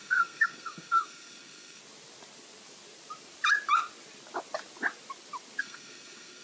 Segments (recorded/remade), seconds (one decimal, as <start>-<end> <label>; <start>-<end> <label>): 0.0-1.8 remade; 1.8-5.6 recorded; 5.6-6.4 remade